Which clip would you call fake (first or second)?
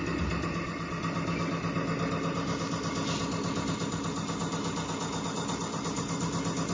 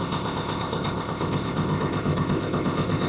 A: second